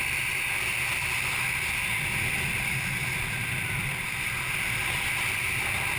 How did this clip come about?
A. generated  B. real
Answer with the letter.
B